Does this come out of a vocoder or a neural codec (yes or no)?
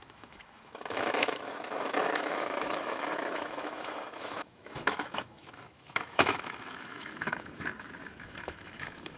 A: yes